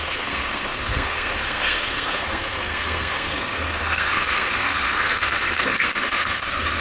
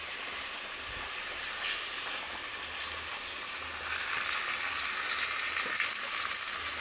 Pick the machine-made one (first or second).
first